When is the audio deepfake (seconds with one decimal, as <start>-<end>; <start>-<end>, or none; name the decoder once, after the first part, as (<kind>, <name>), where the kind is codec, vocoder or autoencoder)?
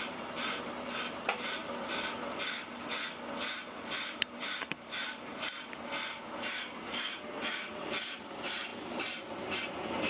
0.0-1.6 (vocoder, BigVGAN v2); 4.0-10.1